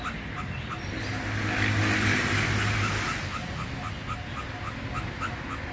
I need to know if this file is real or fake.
real